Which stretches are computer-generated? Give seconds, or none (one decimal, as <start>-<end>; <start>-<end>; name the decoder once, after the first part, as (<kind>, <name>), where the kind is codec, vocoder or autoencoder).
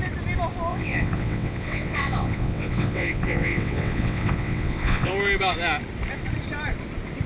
0.7-5.1 (vocoder, WaveNeXt)